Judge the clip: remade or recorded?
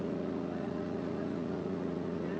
remade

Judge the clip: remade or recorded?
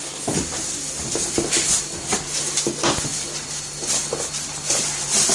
recorded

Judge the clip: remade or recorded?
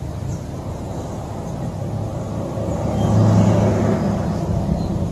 recorded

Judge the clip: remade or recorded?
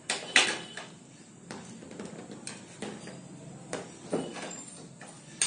recorded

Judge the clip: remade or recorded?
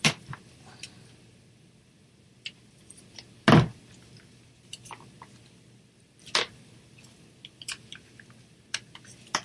recorded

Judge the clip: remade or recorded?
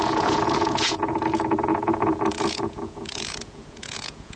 remade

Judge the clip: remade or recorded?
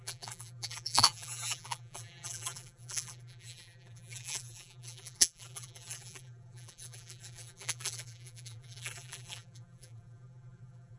remade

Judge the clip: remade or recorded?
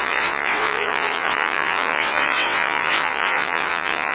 remade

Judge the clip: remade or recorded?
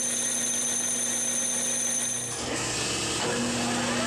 recorded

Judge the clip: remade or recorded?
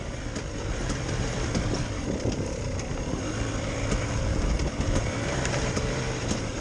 remade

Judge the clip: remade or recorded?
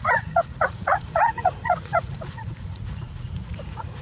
remade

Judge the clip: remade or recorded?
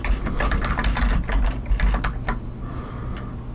recorded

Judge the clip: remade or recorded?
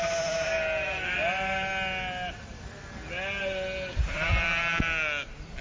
recorded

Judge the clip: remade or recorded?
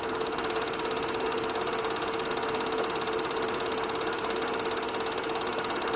recorded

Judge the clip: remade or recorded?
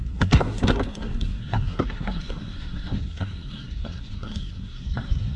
remade